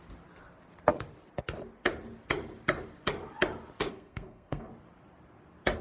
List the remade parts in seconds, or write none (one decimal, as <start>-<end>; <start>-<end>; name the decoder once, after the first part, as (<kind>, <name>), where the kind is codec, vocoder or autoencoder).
3.9-4.7 (codec, SNAC)